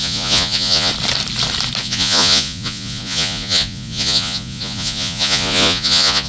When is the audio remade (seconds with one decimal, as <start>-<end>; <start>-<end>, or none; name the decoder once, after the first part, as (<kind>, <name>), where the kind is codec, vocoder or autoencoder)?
0.0-0.9 (vocoder, Vocos); 1.8-6.3